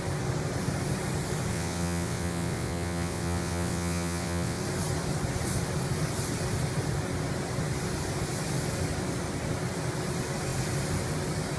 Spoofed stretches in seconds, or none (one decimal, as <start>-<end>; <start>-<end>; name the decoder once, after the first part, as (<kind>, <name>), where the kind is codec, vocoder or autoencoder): 1.5-4.6 (vocoder, WaveNeXt)